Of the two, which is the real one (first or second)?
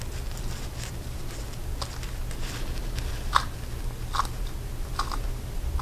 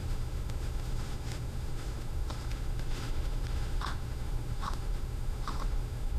first